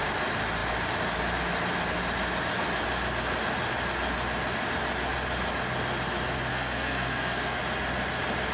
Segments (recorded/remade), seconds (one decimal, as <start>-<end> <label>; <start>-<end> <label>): 0.0-6.5 recorded; 6.5-7.6 remade; 7.6-8.5 recorded